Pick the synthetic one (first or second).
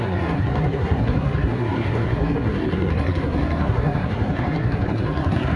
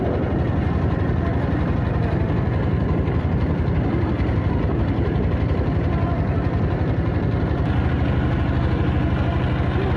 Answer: first